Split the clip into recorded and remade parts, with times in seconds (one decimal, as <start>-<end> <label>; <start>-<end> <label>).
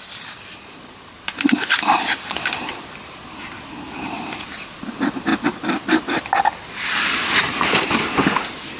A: 0.0-1.3 remade; 1.3-3.0 recorded; 3.0-8.8 remade